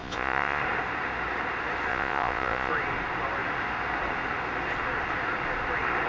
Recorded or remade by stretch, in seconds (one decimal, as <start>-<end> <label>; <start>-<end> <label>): 0.0-0.6 remade; 0.6-1.9 recorded; 1.9-2.7 remade; 2.7-6.1 recorded